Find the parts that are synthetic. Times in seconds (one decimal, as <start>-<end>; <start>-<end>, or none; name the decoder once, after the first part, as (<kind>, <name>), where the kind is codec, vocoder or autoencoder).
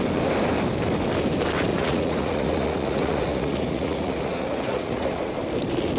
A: 1.7-5.3 (vocoder, Vocos)